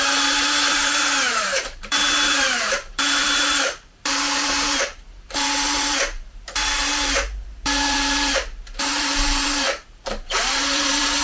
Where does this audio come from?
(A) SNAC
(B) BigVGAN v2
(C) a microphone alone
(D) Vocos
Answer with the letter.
B